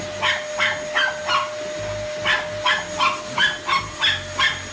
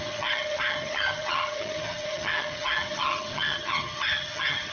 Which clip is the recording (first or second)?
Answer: first